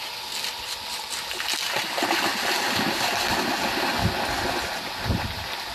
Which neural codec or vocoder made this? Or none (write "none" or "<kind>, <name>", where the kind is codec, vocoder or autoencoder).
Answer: none